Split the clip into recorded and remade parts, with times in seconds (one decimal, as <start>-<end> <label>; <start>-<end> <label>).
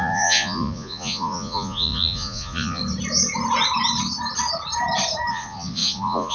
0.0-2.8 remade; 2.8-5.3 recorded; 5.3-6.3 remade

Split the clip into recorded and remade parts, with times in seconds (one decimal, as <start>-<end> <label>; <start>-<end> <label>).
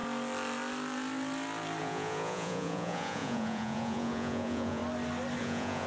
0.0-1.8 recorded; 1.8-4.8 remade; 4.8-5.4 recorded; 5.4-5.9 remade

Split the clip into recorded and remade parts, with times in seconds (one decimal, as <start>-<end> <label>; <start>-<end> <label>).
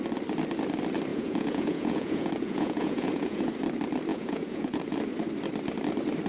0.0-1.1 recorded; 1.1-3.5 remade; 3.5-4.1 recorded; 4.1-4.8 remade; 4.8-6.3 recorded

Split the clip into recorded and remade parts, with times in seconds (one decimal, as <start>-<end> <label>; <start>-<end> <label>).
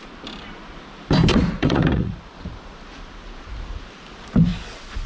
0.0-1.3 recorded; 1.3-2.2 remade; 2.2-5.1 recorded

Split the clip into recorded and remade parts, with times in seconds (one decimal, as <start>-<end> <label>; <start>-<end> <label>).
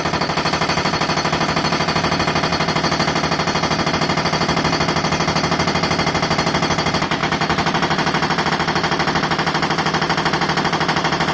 0.0-11.3 recorded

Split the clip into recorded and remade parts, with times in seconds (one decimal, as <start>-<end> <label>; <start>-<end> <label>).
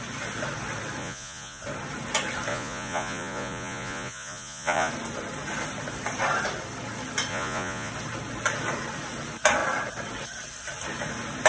0.0-1.0 recorded; 1.0-1.6 remade; 1.6-2.5 recorded; 2.5-4.9 remade; 4.9-7.3 recorded; 7.3-7.9 remade; 7.9-11.5 recorded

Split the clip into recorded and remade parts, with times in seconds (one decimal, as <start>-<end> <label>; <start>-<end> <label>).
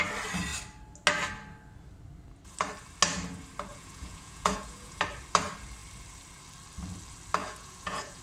0.0-3.7 recorded; 3.7-5.0 remade; 5.0-7.4 recorded; 7.4-8.2 remade